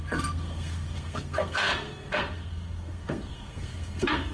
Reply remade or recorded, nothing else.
remade